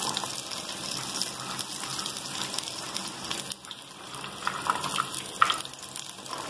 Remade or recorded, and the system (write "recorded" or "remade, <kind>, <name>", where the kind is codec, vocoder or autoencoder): recorded